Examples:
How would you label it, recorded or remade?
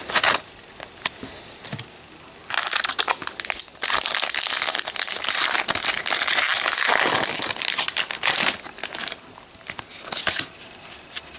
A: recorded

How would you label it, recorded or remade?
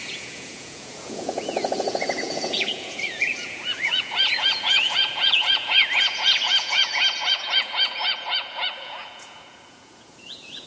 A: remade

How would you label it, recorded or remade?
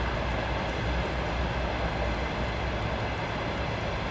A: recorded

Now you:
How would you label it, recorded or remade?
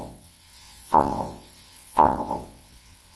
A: remade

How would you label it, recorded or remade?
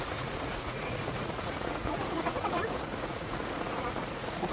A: remade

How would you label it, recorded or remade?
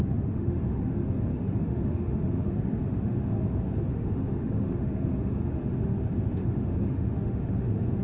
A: remade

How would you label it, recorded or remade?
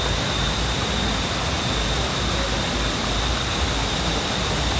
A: recorded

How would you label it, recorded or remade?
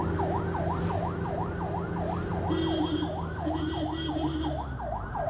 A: recorded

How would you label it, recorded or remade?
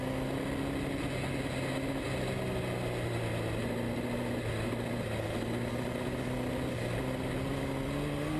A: recorded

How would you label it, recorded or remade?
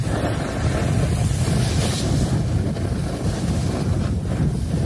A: recorded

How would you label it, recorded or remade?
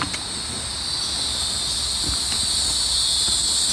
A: recorded